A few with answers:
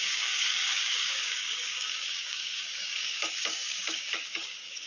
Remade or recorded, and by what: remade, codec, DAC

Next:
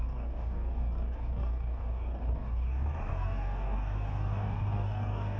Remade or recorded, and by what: remade, codec, DAC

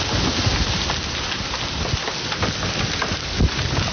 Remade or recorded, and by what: recorded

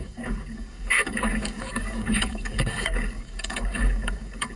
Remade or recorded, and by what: remade, codec, DAC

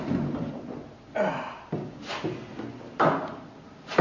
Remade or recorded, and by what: recorded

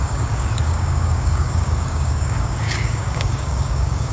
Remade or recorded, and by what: remade, codec, DAC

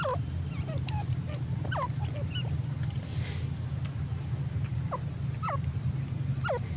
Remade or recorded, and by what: recorded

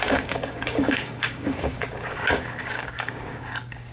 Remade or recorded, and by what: remade, codec, DAC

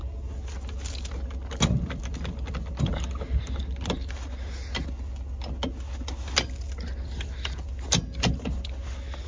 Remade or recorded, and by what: recorded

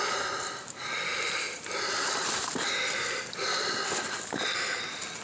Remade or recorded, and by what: recorded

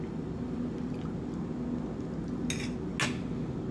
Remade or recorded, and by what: recorded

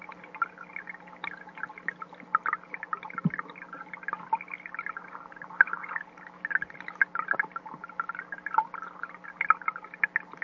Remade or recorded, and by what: recorded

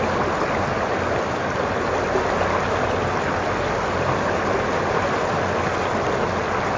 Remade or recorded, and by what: recorded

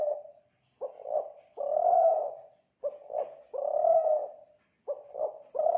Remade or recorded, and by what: recorded